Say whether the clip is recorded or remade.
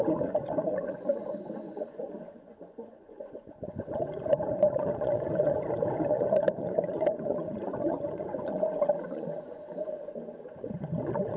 remade